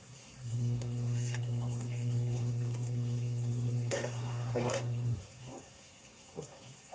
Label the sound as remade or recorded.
remade